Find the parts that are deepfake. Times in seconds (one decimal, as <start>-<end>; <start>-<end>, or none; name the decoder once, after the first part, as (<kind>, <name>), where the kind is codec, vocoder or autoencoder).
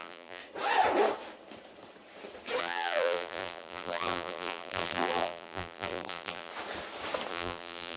0.0-0.4 (vocoder, BigVGAN v2); 2.6-6.5; 7.3-8.0